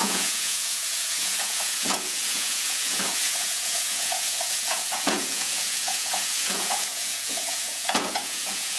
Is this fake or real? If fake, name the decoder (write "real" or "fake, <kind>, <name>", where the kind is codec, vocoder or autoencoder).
fake, vocoder, Vocos